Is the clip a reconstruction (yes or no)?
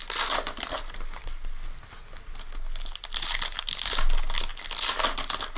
no